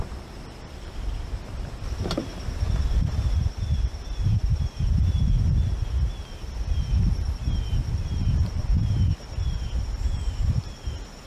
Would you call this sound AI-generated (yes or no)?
no